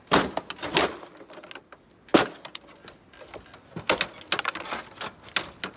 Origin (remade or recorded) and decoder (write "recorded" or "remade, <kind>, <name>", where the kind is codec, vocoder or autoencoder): recorded